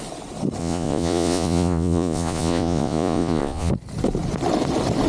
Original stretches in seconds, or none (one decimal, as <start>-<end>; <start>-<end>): 0.0-0.6; 3.7-5.1